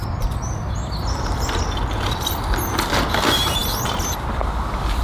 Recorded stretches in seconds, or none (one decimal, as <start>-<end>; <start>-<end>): 0.0-5.0